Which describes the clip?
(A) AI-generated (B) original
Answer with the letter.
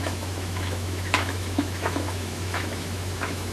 A